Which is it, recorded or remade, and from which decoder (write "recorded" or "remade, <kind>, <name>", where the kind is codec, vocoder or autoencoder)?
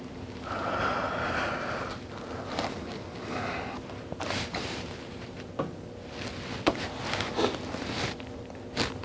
recorded